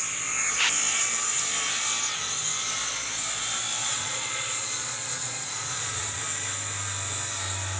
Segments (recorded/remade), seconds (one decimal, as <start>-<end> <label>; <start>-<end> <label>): 0.0-3.8 recorded; 3.8-6.2 remade; 6.2-7.8 recorded